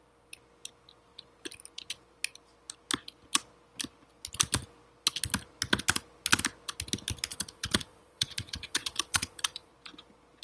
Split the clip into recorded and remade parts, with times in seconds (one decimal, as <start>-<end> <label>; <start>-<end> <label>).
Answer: 0.0-7.3 recorded; 7.3-9.7 remade; 9.7-10.4 recorded